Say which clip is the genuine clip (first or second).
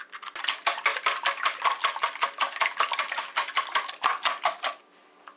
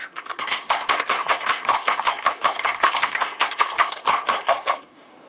first